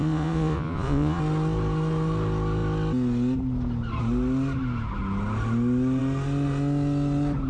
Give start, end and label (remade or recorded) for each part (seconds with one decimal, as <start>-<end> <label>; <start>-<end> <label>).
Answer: 0.0-1.2 remade; 1.2-7.5 recorded